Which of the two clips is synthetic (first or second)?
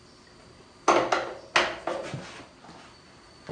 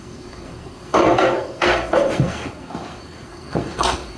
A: second